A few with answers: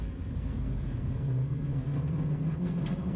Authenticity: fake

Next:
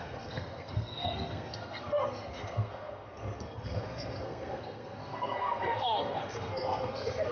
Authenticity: fake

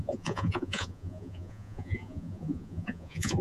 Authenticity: fake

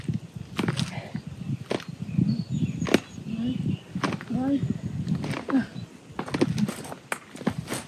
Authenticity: real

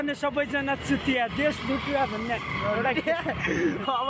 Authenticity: real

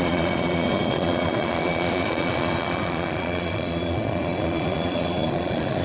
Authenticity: fake